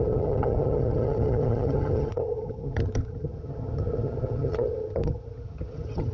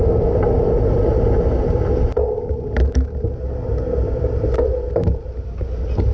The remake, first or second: first